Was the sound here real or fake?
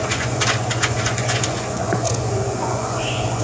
fake